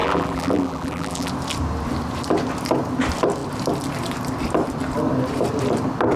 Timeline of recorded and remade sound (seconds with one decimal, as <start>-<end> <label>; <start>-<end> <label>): 0.0-1.3 remade; 1.3-6.2 recorded